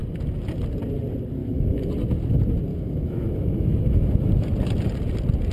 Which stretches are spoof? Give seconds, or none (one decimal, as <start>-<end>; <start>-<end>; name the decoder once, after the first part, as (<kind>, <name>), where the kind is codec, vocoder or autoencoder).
1.4-1.9 (autoencoder, DAC-VAE); 2.7-4.3